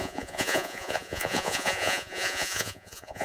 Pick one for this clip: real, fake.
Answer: fake